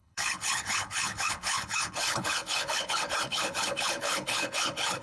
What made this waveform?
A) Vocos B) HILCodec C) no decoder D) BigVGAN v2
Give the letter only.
B